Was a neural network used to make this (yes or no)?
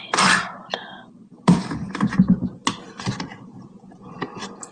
no